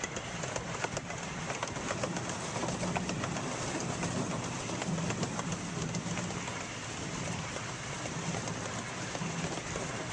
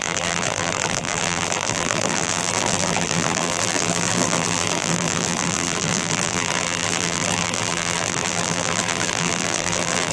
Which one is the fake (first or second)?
second